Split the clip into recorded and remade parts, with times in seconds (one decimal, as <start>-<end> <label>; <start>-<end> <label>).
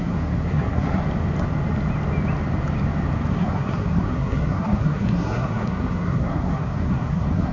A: 0.0-1.0 remade; 1.0-3.3 recorded; 3.3-7.5 remade